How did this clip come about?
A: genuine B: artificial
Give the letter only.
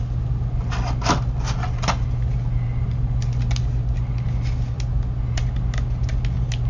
A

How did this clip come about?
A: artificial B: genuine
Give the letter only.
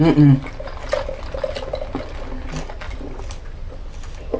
B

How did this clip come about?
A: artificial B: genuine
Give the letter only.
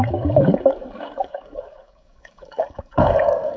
A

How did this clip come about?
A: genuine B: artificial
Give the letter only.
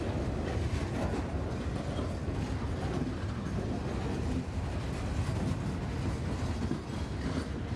A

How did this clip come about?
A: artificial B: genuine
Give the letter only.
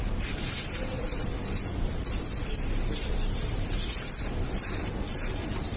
A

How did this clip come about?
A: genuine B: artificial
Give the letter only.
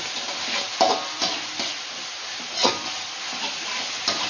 A